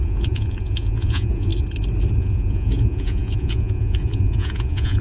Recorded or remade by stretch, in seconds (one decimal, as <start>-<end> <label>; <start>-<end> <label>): 0.0-1.5 remade; 1.5-2.2 recorded; 2.2-5.0 remade